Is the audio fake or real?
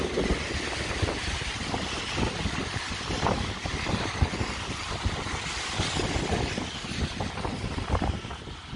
real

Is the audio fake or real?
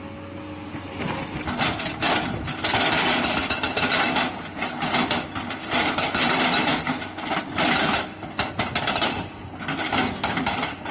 real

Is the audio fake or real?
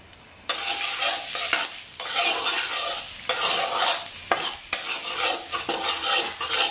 real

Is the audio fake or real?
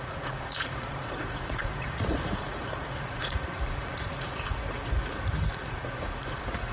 fake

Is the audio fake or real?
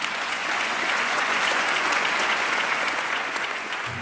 fake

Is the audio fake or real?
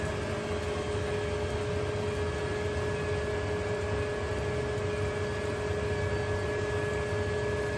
real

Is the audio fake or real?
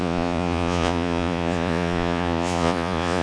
fake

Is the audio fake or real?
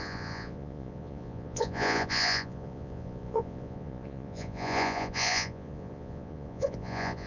fake